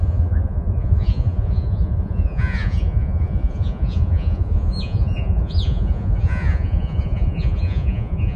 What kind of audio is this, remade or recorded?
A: remade